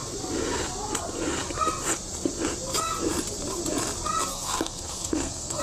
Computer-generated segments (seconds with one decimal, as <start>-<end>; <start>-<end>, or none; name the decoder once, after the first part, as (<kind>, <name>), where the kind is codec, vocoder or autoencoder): 4.3-5.6 (codec, SNAC)